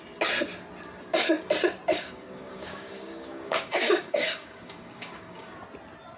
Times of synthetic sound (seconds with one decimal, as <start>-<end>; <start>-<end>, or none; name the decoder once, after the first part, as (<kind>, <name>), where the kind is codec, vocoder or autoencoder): 1.9-5.6 (codec, DAC)